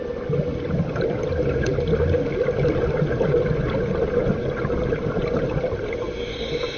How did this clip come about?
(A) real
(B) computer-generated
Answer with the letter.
A